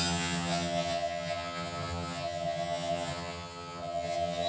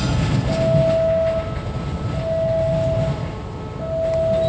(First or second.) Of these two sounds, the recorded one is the second